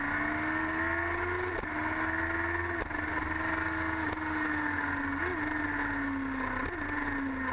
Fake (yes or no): no